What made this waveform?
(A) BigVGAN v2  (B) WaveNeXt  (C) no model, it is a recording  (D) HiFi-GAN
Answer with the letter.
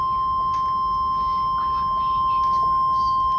C